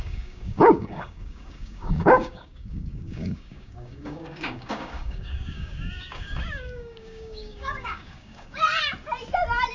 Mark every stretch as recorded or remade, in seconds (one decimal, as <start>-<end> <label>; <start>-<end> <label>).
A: 0.0-8.6 remade; 8.6-9.7 recorded

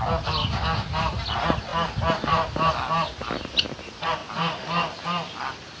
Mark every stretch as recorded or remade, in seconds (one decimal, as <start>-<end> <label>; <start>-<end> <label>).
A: 0.0-0.4 recorded; 0.4-0.9 remade; 0.9-5.8 recorded

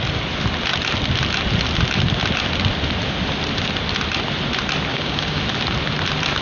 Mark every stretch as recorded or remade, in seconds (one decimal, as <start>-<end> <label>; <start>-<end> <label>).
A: 0.0-4.9 recorded; 4.9-5.4 remade; 5.4-6.4 recorded

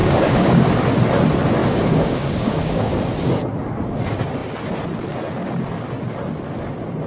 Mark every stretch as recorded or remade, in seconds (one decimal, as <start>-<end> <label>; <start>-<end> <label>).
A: 0.0-0.7 remade; 0.7-1.6 recorded; 1.6-3.1 remade; 3.1-7.1 recorded

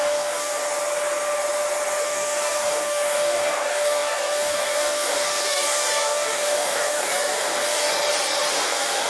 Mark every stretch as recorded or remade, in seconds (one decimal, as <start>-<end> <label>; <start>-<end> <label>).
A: 0.0-0.6 remade; 0.6-2.0 recorded; 2.0-7.9 remade; 7.9-8.5 recorded; 8.5-9.1 remade

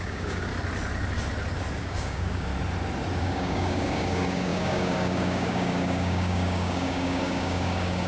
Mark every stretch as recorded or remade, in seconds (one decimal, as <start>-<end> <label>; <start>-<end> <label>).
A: 0.0-0.5 remade; 0.5-1.8 recorded; 1.8-2.5 remade; 2.5-3.2 recorded; 3.2-8.1 remade

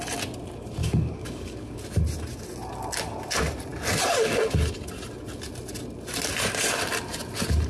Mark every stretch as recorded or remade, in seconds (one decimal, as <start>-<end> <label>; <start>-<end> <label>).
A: 0.0-0.8 recorded; 0.8-1.8 remade; 1.8-7.7 recorded